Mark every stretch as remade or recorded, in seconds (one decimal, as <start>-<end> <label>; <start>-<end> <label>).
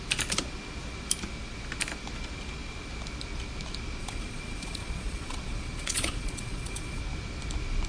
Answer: 0.0-4.0 recorded; 4.0-7.0 remade; 7.0-7.9 recorded